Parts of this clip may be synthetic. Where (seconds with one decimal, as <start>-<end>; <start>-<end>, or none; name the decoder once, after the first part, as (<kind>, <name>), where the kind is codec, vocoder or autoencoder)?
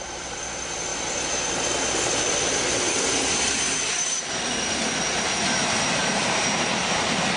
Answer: 0.0-0.9 (vocoder, BigVGAN v2); 2.3-6.0